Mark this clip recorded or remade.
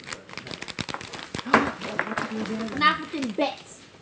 recorded